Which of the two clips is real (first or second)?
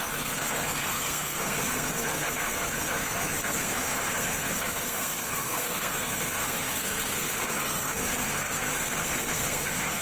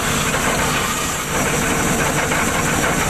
second